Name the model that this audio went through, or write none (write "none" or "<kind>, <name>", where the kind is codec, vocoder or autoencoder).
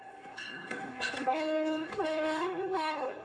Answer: codec, SNAC